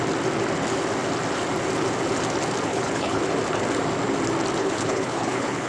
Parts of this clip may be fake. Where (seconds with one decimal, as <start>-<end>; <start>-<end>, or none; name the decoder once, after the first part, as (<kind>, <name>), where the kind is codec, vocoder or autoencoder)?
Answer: 2.7-3.2 (codec, HILCodec); 4.6-5.7